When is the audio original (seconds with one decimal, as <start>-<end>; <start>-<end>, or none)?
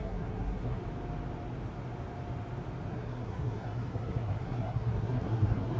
0.8-2.9